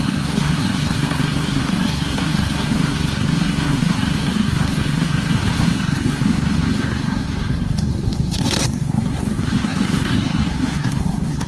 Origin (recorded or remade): remade